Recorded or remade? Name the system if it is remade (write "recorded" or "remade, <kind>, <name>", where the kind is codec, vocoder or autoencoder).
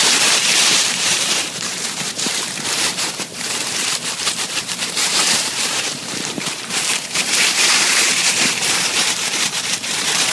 remade, vocoder, BigVGAN v2